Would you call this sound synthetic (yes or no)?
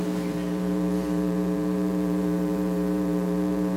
yes